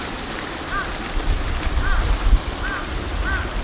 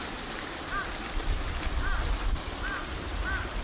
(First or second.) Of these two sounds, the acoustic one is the first